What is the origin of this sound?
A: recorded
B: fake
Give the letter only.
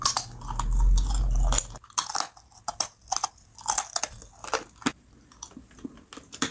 A